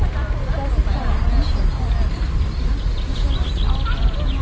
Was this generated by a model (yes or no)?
no